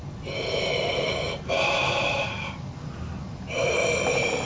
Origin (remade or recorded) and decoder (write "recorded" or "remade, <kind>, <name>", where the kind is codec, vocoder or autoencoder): recorded